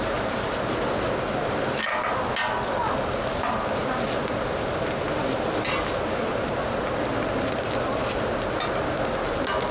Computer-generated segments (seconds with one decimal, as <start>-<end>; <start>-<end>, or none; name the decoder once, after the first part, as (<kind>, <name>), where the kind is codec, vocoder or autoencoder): none